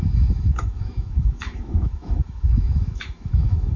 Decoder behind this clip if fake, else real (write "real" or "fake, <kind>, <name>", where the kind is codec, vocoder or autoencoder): fake, autoencoder, DAC-VAE